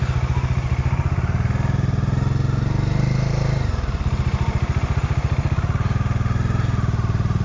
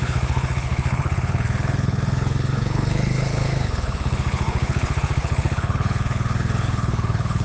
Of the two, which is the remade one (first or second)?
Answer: second